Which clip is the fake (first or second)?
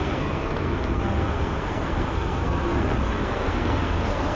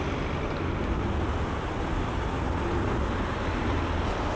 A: first